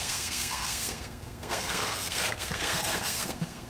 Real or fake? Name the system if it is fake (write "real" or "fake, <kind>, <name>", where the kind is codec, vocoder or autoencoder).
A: fake, codec, SNAC